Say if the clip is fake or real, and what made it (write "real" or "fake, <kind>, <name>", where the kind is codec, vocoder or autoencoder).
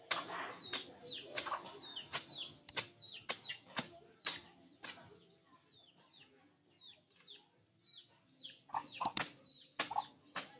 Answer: real